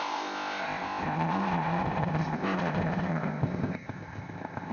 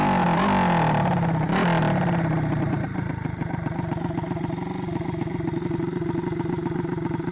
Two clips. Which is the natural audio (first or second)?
second